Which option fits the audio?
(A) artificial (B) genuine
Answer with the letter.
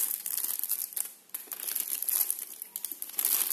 B